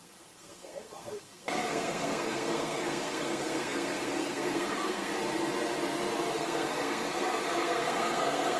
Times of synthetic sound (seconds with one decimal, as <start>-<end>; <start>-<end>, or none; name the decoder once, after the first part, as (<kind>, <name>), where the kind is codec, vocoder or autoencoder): 0.0-5.1 (codec, SNAC); 6.3-8.6